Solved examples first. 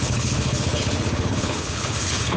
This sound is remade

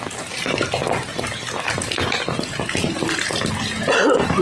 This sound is recorded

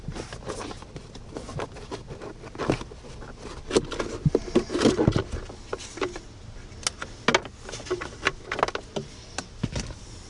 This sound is recorded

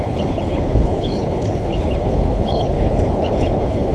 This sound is remade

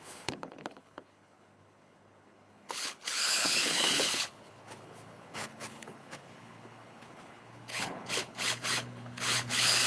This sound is remade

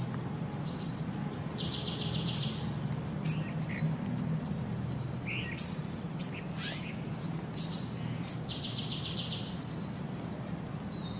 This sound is recorded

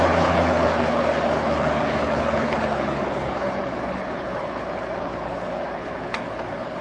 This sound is remade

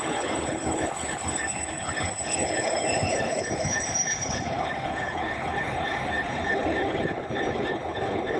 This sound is remade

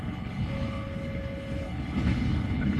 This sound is remade